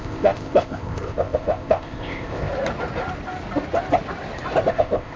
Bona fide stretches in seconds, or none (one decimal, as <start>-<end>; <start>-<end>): 2.5-4.7